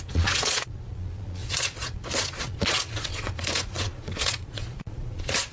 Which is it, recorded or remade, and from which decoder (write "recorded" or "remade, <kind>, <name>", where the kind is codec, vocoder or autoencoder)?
remade, vocoder, Vocos